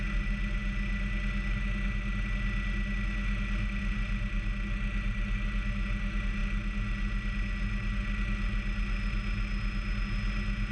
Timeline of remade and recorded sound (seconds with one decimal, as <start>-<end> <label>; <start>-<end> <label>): 0.0-10.7 recorded